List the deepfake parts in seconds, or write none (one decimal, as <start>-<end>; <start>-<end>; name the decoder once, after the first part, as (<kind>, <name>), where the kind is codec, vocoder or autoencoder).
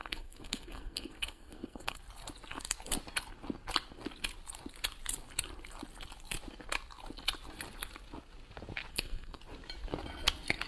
0.0-2.0 (codec, SNAC); 8.9-9.4